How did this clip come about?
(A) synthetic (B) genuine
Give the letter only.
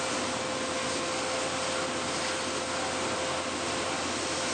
B